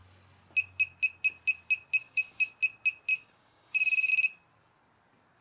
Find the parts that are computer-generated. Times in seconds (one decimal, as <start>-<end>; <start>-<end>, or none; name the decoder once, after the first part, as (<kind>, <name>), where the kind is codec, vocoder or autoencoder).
2.0-2.5 (codec, DAC); 3.1-4.1